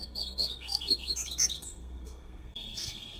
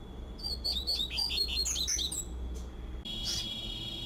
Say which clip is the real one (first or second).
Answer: second